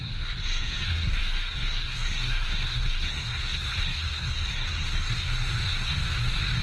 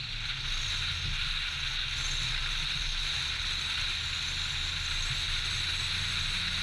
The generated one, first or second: first